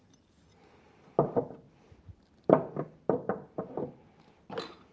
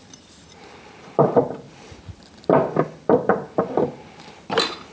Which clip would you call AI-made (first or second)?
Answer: second